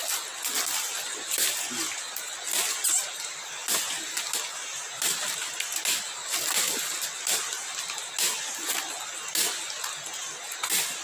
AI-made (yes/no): no